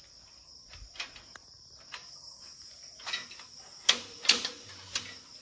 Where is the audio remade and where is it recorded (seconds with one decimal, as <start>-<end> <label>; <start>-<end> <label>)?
0.0-5.4 recorded